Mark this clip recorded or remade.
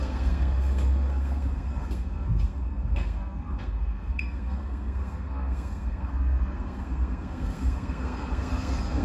remade